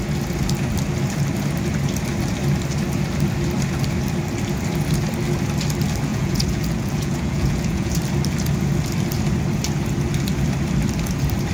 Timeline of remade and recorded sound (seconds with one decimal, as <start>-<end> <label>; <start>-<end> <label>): 0.0-6.1 recorded; 6.1-8.0 remade; 8.0-11.5 recorded